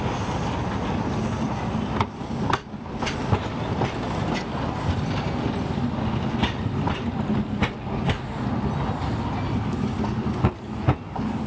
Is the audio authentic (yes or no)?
yes